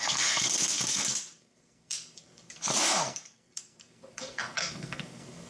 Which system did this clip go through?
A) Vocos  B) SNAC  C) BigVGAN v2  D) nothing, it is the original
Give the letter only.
B